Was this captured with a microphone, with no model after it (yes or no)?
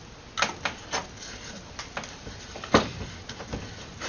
yes